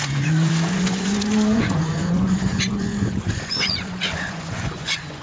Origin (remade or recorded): remade